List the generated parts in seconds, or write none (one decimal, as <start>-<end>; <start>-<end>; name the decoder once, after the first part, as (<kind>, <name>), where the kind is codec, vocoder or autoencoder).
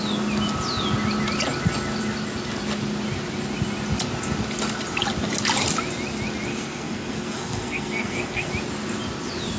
6.5-8.5 (codec, SNAC)